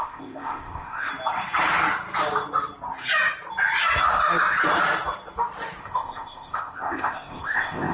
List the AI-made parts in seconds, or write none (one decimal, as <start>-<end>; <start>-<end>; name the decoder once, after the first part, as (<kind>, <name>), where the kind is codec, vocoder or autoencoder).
0.0-1.1 (codec, ZipCodec); 5.8-7.9